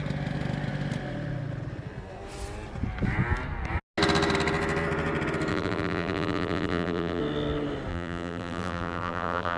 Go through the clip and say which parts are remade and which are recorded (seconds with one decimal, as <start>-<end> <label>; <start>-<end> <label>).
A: 0.0-5.5 recorded; 5.5-7.2 remade; 7.2-7.9 recorded; 7.9-9.6 remade